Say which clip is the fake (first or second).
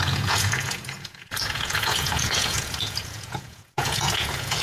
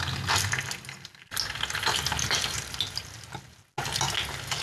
first